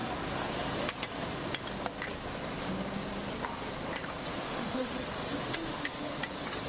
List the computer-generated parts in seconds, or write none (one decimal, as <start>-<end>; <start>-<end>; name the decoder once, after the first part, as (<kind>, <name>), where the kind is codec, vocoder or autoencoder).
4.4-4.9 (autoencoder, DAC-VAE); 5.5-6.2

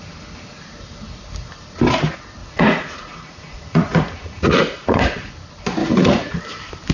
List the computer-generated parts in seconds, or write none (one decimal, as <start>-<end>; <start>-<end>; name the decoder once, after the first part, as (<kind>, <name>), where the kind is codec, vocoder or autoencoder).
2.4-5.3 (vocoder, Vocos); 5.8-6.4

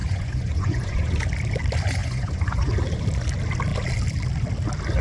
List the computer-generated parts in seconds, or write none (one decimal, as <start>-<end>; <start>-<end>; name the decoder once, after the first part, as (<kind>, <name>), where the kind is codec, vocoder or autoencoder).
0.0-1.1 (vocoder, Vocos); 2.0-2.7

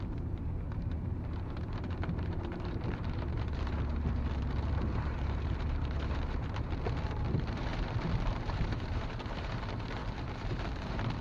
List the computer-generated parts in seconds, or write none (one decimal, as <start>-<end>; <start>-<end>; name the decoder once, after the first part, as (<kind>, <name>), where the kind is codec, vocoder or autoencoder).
0.0-11.2 (vocoder, BigVGAN v2)